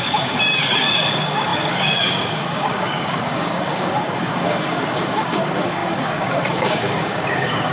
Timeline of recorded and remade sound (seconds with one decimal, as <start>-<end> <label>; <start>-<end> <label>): 0.0-7.7 remade